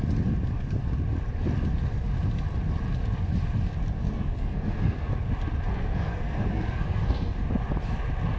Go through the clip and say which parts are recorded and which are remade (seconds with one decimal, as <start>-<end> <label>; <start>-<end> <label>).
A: 0.0-4.0 recorded; 4.0-5.1 remade; 5.1-5.7 recorded; 5.7-7.4 remade; 7.4-8.4 recorded